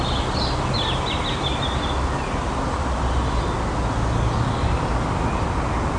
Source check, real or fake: real